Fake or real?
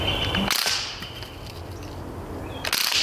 real